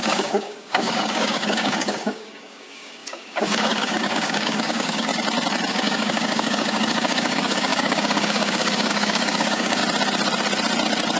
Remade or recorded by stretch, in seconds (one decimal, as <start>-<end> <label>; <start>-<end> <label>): 0.0-5.1 remade; 5.1-5.7 recorded; 5.7-9.8 remade; 9.8-11.2 recorded